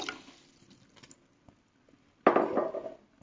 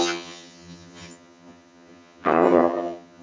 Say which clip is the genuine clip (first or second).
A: first